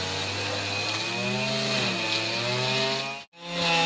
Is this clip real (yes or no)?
yes